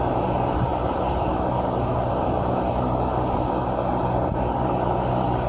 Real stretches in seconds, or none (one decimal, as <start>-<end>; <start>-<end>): 0.0-5.5